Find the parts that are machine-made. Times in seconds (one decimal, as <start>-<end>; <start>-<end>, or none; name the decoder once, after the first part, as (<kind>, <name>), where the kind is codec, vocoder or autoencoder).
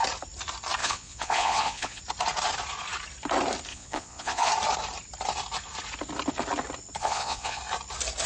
0.8-2.0 (vocoder, Vocos); 3.7-4.5; 7.0-7.6